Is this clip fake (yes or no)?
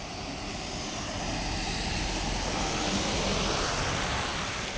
no